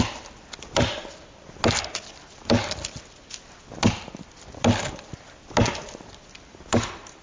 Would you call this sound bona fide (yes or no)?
yes